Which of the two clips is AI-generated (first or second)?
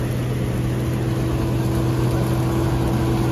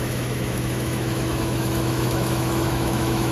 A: second